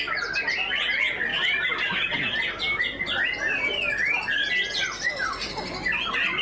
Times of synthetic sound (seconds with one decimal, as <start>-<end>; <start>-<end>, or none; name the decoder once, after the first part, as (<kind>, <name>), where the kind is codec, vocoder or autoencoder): none